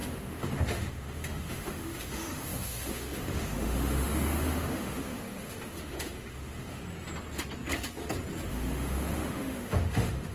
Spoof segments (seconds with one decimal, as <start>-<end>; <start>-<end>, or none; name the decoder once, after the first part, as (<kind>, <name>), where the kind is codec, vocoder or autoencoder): 0.0-6.8 (autoencoder, DAC-VAE); 8.5-10.3